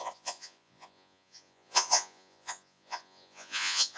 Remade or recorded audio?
remade